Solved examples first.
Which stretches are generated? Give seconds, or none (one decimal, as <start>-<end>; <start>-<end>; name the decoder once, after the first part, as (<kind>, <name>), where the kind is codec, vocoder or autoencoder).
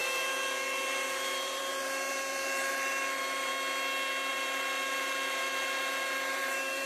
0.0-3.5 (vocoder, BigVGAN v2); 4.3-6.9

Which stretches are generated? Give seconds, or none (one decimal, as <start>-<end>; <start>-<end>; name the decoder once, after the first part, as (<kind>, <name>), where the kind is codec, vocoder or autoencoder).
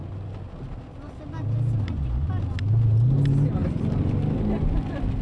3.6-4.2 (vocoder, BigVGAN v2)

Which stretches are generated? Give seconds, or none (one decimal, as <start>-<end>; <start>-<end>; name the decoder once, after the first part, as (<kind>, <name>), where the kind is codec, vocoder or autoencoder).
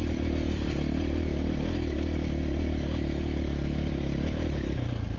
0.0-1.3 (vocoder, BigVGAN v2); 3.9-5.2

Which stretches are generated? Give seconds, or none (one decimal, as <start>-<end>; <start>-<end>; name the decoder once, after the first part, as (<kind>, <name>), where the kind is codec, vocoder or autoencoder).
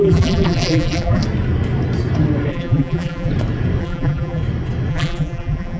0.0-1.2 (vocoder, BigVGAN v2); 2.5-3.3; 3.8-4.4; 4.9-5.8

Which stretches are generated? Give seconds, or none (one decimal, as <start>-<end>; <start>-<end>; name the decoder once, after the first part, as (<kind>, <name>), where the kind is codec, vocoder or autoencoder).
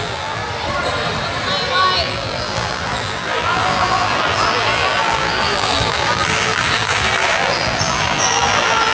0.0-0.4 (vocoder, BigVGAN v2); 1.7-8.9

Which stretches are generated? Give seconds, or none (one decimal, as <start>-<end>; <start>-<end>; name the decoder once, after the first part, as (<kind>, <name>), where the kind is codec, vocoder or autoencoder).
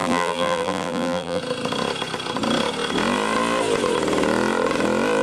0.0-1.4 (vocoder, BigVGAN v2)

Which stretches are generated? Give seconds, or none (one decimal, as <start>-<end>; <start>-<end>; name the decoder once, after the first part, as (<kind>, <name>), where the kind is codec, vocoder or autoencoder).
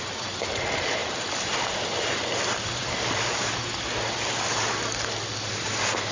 1.0-3.5 (vocoder, BigVGAN v2)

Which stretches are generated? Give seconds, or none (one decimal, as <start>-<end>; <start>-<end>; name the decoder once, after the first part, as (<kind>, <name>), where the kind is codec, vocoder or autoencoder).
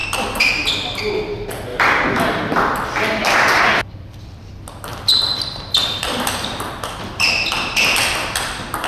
1.7-4.5 (vocoder, BigVGAN v2); 5.8-7.9